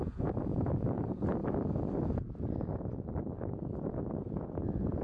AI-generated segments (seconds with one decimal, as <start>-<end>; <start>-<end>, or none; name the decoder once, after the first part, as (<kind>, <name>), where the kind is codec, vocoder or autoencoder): 0.0-1.4 (vocoder, Vocos); 4.2-5.0